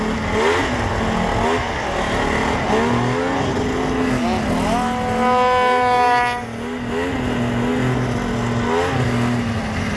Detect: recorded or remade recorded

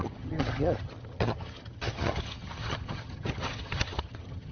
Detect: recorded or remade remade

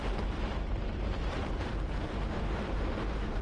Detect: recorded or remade remade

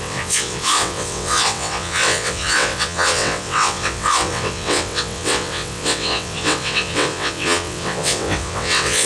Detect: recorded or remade remade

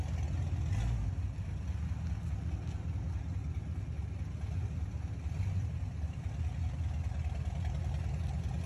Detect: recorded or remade recorded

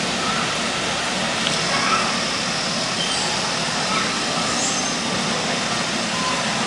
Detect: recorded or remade recorded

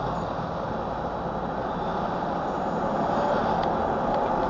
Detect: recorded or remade recorded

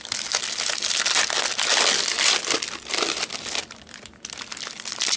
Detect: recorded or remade recorded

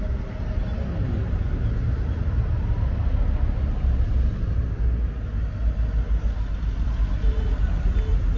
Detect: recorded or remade recorded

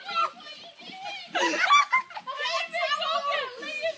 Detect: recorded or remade recorded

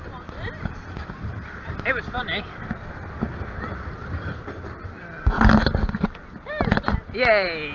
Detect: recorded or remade recorded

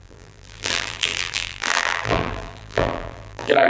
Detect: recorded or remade remade